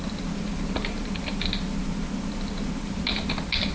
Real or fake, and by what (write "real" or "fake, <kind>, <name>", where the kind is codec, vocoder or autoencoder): real